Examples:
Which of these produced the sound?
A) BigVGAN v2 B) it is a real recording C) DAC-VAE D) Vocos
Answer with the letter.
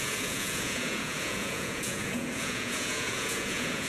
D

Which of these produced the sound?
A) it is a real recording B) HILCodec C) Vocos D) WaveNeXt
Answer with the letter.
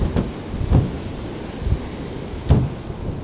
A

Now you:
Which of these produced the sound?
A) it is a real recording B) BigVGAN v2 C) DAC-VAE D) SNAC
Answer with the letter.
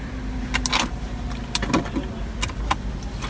A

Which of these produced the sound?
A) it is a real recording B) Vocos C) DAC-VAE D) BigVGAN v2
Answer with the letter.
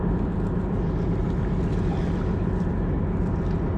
D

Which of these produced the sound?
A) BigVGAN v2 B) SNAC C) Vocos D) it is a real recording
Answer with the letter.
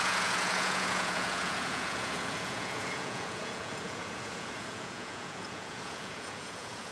C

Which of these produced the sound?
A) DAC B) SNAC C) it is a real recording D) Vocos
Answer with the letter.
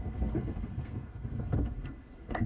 B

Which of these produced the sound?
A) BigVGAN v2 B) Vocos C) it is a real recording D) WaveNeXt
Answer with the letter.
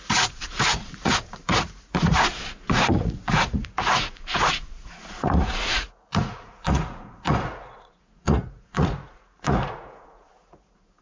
B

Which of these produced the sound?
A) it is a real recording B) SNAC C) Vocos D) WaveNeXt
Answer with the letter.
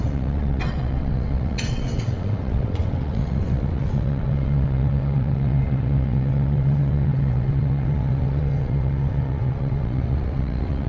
D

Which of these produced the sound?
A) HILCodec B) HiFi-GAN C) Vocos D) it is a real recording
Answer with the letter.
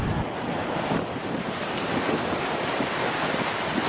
D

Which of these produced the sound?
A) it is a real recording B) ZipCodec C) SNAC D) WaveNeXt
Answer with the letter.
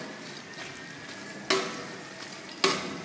A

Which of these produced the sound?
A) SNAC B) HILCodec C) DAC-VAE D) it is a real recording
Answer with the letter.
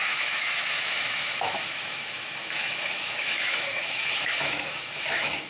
C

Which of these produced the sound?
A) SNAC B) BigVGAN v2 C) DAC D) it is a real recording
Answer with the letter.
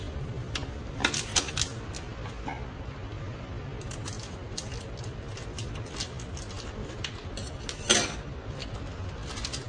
D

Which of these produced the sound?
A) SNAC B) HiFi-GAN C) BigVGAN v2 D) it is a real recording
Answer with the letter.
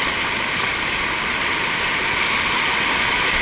D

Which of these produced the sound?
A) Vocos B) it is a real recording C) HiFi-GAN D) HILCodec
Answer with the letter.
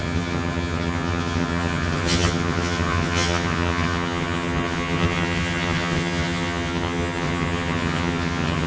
C